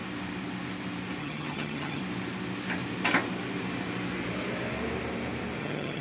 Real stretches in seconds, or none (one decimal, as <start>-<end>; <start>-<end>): 0.0-1.2; 2.0-5.6